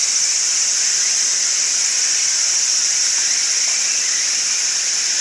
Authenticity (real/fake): fake